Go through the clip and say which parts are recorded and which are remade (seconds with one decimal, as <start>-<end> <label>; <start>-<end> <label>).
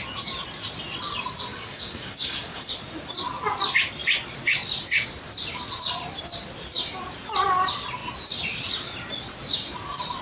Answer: 0.0-1.5 recorded; 1.5-2.7 remade; 2.7-10.2 recorded